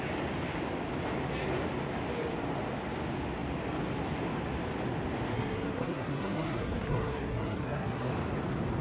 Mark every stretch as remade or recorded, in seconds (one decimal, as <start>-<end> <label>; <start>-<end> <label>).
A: 0.0-5.3 recorded; 5.3-8.1 remade; 8.1-8.8 recorded